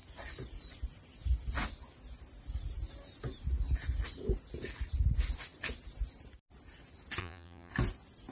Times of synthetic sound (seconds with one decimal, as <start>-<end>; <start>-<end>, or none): 7.2-7.7